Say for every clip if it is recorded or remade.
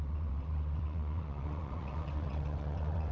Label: remade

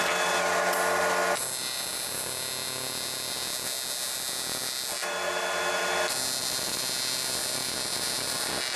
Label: recorded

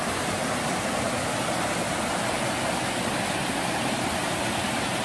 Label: recorded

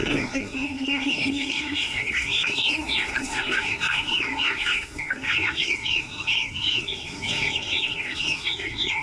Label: remade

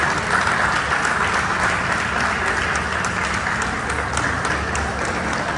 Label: recorded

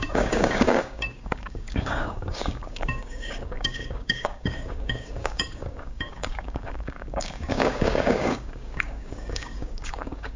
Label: remade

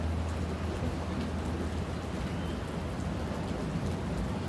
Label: recorded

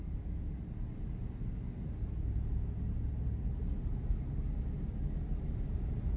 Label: recorded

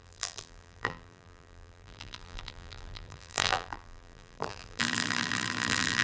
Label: remade